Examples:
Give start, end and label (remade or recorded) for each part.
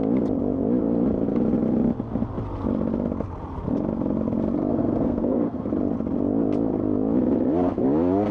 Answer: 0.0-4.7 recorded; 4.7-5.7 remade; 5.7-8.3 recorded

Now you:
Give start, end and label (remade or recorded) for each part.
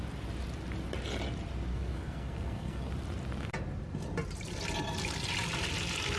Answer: 0.0-1.7 recorded; 1.7-2.9 remade; 2.9-6.2 recorded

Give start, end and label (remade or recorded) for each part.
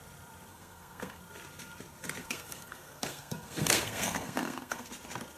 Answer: 0.0-0.5 recorded; 0.5-1.2 remade; 1.2-2.2 recorded; 2.2-4.9 remade; 4.9-5.4 recorded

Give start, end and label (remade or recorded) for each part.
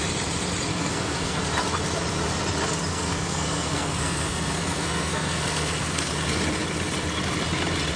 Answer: 0.0-0.7 recorded; 0.7-1.4 remade; 1.4-2.9 recorded; 2.9-6.1 remade; 6.1-8.0 recorded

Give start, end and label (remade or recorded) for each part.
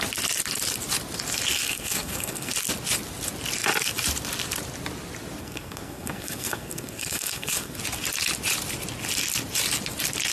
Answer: 0.0-1.5 recorded; 1.5-2.5 remade; 2.5-5.4 recorded; 5.4-7.8 remade; 7.8-10.3 recorded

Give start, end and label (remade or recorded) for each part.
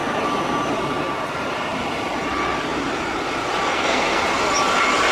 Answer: 0.0-3.7 recorded; 3.7-4.2 remade; 4.2-5.1 recorded